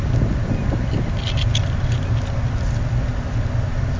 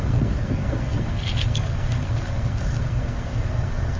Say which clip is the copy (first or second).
second